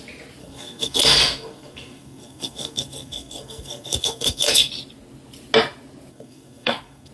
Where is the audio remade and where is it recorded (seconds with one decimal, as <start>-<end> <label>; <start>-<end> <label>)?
0.0-0.4 recorded; 0.4-4.7 remade; 4.7-6.1 recorded; 6.1-7.1 remade

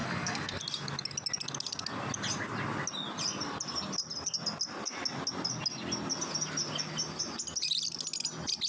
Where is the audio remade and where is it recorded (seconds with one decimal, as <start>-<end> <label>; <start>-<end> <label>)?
0.0-0.6 remade; 0.6-8.7 recorded

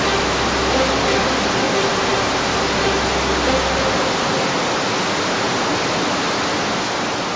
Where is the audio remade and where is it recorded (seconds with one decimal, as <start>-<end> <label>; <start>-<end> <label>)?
0.0-7.4 recorded

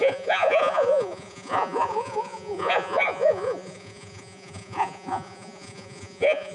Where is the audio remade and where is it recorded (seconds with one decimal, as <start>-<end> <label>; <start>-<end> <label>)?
0.0-6.5 remade

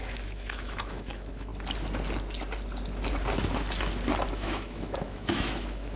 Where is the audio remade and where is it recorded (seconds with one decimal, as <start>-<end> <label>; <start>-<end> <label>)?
0.0-1.5 remade; 1.5-4.3 recorded; 4.3-6.0 remade

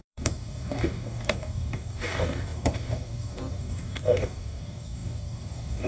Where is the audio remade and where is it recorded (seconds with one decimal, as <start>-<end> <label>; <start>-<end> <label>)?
0.0-5.9 remade

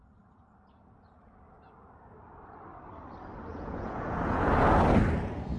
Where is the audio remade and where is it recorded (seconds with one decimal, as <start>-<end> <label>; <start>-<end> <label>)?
0.0-3.5 recorded; 3.5-4.5 remade; 4.5-5.6 recorded

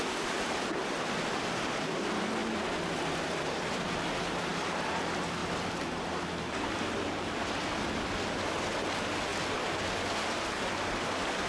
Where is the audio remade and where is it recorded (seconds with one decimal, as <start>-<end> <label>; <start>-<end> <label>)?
0.0-2.4 recorded; 2.4-4.9 remade; 4.9-11.5 recorded